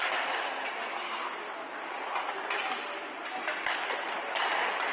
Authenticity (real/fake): real